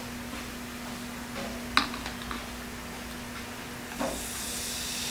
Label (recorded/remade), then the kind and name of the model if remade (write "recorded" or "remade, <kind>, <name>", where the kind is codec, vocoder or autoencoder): recorded